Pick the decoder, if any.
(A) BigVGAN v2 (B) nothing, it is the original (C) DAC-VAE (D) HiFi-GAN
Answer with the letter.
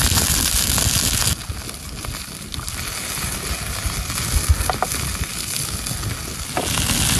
B